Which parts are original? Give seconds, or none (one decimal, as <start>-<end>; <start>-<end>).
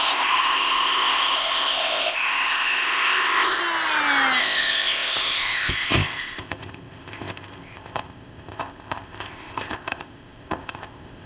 3.6-4.4